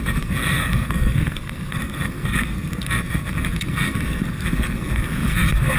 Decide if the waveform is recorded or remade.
remade